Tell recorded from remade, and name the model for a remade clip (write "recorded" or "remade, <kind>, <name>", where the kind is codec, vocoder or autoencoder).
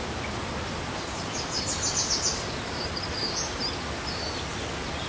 recorded